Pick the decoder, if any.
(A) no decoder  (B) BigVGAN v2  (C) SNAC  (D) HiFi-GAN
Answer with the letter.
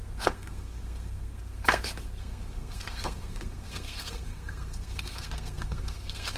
C